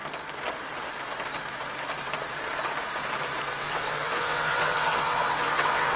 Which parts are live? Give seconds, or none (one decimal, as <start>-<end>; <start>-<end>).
0.0-3.6